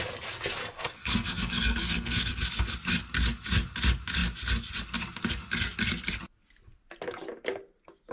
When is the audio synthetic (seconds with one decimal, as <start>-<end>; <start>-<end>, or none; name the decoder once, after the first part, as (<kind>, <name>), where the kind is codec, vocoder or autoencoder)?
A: 0.6-2.3 (codec, SNAC)